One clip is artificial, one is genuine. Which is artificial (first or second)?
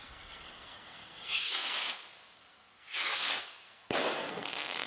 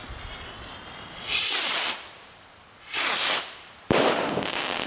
first